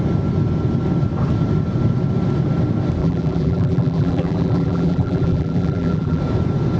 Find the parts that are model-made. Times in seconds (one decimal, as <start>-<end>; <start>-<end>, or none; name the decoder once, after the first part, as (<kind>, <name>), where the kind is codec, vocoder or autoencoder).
3.0-6.2 (vocoder, BigVGAN v2)